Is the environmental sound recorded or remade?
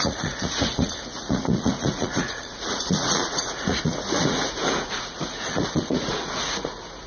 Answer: remade